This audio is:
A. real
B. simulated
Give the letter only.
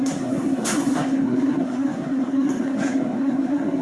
B